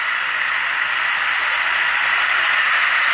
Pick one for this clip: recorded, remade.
recorded